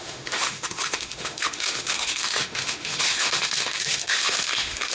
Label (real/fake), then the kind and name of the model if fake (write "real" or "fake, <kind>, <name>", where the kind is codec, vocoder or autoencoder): fake, autoencoder, DAC-VAE